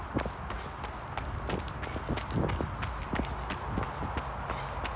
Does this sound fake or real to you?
real